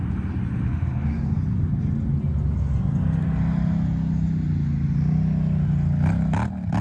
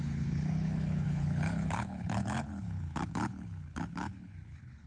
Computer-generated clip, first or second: second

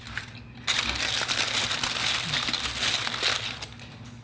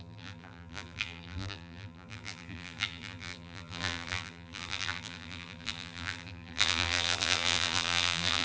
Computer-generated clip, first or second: second